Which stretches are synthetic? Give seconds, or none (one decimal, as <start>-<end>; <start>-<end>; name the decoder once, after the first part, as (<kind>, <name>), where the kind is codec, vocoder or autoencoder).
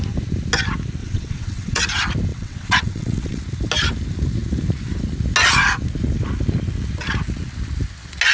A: 1.0-1.8 (vocoder, WaveNeXt); 2.3-3.4